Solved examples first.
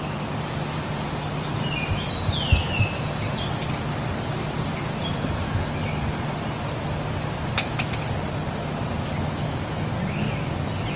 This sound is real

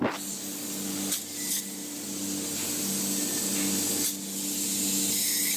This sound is real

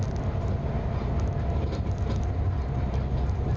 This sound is real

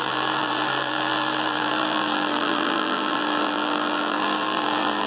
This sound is fake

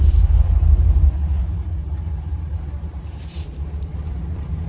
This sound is fake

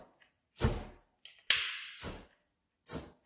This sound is real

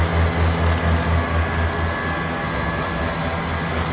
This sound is real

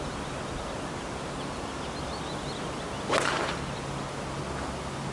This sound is real